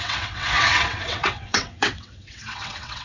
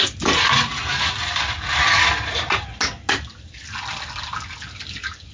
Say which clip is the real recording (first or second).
second